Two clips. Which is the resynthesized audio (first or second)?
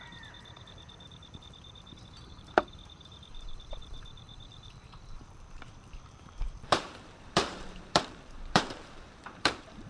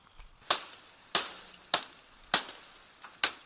first